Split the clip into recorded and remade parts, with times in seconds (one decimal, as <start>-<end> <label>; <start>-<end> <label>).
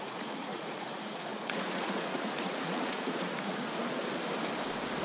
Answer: 0.0-4.0 remade; 4.0-5.0 recorded